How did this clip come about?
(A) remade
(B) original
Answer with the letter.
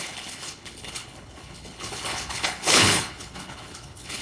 A